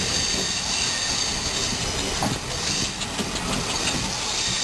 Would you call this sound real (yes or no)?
yes